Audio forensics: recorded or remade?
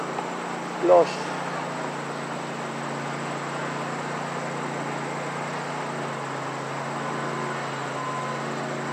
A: recorded